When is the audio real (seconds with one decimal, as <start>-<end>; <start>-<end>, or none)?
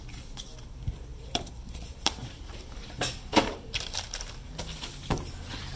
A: 0.0-1.1; 4.5-5.8